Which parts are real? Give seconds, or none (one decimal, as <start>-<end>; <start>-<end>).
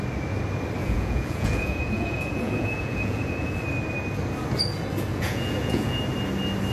0.0-0.8; 3.6-5.1; 6.0-6.7